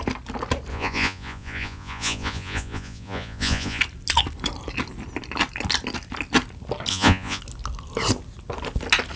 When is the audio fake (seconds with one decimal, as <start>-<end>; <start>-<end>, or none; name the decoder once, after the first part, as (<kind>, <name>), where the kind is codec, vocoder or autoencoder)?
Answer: 0.7-3.8 (vocoder, Vocos); 6.9-7.4